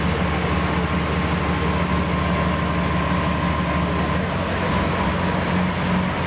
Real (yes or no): yes